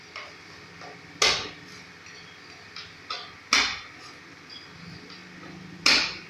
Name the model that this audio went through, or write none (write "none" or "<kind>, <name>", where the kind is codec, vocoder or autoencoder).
none